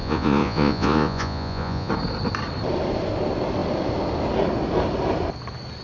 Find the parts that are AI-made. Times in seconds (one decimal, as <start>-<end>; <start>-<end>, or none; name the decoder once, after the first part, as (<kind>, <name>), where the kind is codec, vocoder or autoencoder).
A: 0.0-1.9 (vocoder, Vocos)

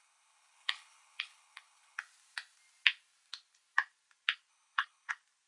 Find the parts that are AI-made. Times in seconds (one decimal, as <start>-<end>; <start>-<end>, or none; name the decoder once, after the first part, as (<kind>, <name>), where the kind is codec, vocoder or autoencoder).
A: 0.0-2.0 (codec, HILCodec); 4.5-5.1

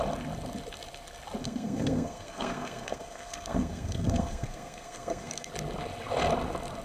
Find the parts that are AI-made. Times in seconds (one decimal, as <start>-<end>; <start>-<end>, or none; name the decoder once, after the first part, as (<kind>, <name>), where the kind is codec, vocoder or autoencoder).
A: 1.4-5.5 (codec, SNAC)

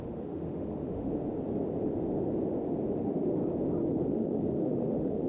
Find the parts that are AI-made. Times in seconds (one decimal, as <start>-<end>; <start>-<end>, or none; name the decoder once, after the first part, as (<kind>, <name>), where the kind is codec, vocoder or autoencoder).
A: 0.0-1.2 (autoencoder, DAC-VAE); 3.0-3.4; 4.1-5.3

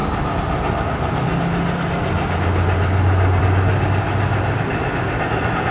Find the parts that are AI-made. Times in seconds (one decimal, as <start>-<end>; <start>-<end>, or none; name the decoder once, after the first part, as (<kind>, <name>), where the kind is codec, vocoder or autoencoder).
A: none

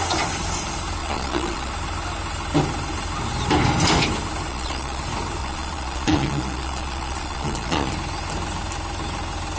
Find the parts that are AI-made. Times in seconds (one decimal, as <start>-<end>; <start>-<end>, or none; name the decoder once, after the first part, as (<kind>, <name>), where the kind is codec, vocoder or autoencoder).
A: 1.0-1.7 (vocoder, Vocos); 4.5-5.0; 5.4-7.9